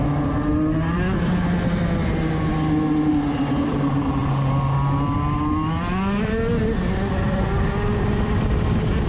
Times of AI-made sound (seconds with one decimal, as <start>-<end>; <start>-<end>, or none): none